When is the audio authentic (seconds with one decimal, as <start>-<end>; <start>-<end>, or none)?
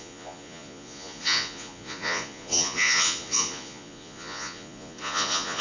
none